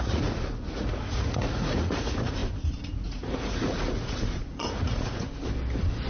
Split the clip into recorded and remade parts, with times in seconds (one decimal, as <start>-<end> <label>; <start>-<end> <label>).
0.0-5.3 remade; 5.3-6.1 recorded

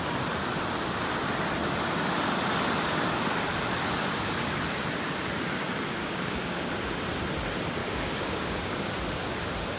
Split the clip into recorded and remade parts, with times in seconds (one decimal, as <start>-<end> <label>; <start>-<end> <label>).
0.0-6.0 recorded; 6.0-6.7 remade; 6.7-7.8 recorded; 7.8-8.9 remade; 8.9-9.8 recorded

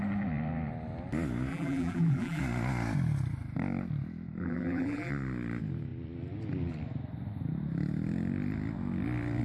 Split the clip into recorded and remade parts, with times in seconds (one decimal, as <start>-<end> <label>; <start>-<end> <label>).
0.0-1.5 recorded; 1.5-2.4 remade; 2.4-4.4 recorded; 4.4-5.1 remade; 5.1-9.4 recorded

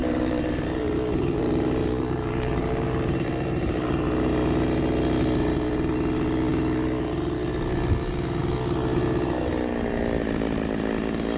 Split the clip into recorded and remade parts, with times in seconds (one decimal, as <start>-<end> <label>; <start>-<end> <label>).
0.0-3.9 remade; 3.9-11.4 recorded